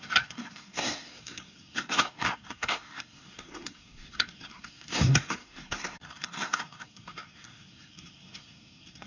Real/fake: fake